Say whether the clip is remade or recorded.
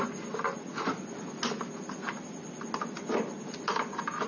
recorded